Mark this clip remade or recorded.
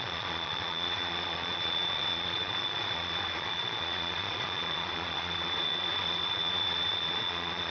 remade